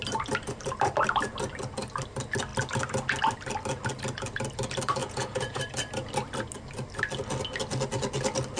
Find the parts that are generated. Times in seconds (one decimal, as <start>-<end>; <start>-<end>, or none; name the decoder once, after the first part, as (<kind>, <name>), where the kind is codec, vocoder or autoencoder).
5.0-5.6 (vocoder, Vocos)